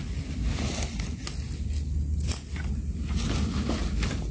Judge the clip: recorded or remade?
recorded